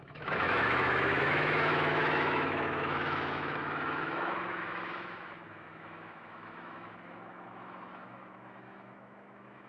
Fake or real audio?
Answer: fake